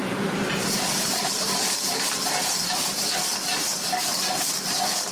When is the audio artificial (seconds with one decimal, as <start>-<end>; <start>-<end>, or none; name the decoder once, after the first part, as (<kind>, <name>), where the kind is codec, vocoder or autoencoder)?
0.0-3.0 (vocoder, BigVGAN v2)